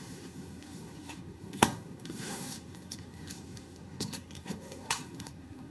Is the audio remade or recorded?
remade